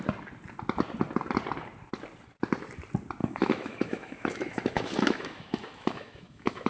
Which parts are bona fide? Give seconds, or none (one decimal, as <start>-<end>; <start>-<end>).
0.0-3.2